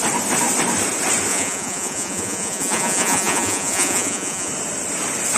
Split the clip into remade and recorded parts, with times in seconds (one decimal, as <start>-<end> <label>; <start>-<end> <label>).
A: 0.0-1.3 recorded; 1.3-4.5 remade; 4.5-5.4 recorded